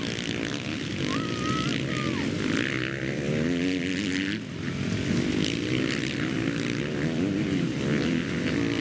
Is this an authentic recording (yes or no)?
yes